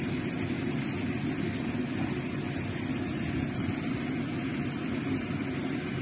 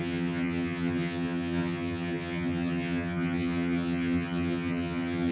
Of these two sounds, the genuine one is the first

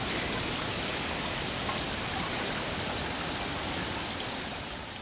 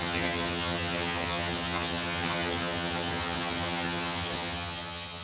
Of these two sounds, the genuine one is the first